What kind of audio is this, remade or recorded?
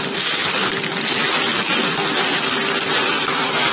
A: recorded